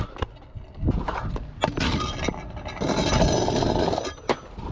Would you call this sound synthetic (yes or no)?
no